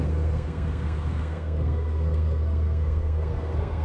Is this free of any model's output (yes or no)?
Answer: no